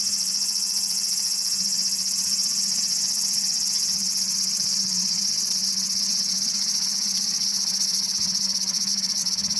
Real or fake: fake